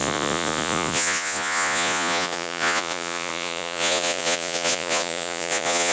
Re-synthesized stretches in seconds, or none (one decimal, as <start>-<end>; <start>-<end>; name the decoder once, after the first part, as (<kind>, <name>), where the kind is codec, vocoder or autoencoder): 0.0-5.9 (vocoder, Vocos)